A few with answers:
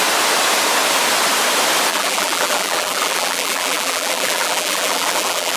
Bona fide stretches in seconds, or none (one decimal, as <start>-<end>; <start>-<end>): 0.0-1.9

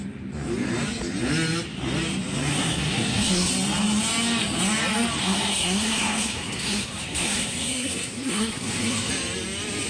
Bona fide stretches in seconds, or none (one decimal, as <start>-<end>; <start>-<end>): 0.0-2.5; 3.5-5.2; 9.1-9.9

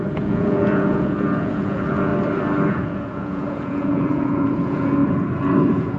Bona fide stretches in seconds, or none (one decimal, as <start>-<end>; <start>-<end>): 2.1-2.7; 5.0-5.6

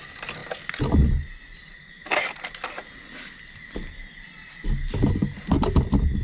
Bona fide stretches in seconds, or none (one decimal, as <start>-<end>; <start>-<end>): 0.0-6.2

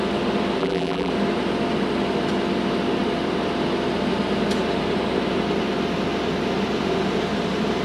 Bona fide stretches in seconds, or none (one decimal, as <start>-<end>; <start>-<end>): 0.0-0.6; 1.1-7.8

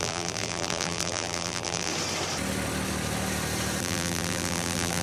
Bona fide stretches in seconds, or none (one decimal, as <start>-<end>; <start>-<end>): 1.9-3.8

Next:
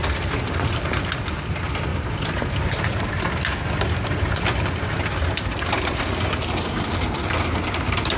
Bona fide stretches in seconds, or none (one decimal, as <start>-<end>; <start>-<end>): 0.0-1.9; 3.1-8.2

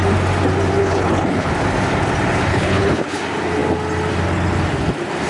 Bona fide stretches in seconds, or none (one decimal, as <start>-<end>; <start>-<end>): 0.0-0.8; 1.5-2.5; 3.2-5.3